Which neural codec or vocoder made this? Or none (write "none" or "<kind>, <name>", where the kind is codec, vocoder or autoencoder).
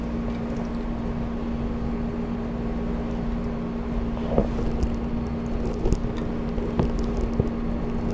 none